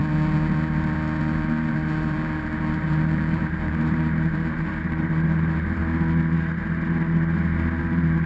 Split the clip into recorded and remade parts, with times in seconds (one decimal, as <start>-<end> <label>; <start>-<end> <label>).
0.0-1.2 recorded; 1.2-5.8 remade; 5.8-7.8 recorded; 7.8-8.3 remade